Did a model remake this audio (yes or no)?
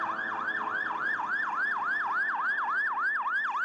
no